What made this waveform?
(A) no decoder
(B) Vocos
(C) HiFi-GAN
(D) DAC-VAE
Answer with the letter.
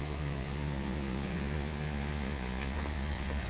B